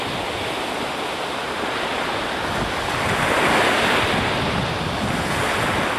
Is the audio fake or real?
real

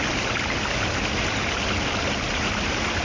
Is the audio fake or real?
real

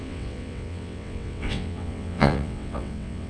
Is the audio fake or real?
fake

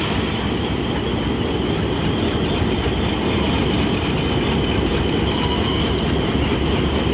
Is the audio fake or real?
real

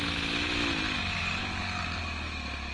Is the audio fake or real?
real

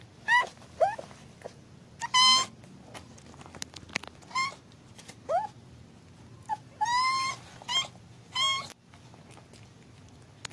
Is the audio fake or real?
real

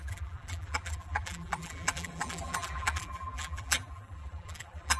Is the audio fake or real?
fake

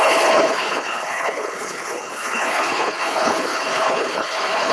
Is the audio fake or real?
fake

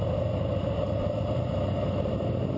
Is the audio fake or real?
real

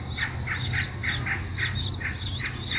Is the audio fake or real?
real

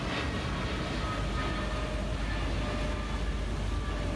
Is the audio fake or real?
real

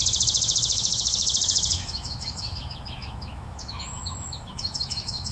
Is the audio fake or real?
fake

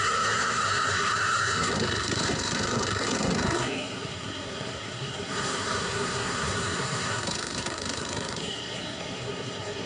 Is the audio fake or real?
fake